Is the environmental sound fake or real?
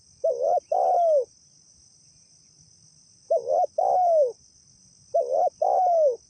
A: real